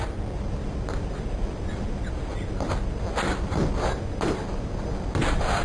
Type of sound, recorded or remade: recorded